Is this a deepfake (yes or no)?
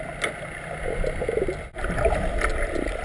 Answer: no